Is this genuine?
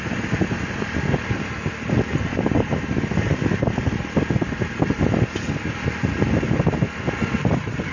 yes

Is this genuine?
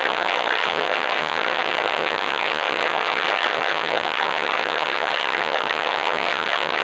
no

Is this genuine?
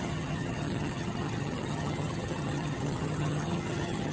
no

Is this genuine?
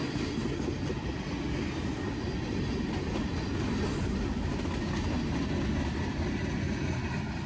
yes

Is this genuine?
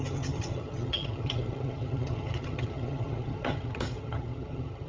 no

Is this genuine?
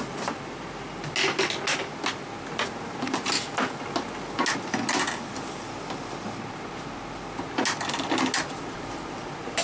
yes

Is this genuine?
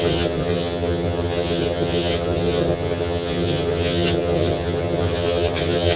no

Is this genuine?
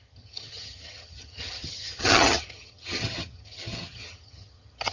no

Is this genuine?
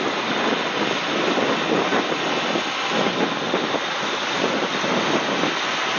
yes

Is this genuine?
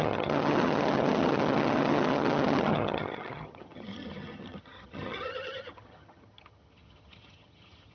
no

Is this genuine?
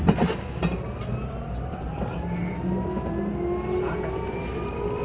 yes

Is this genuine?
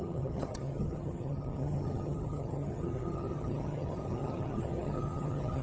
no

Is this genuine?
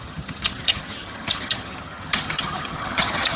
no